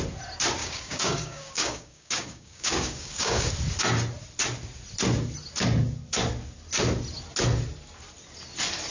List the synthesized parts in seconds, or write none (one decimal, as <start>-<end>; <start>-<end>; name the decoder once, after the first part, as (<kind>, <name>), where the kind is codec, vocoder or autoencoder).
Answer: 0.6-3.5 (codec, DAC)